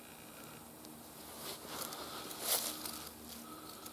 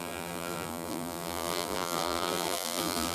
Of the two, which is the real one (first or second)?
first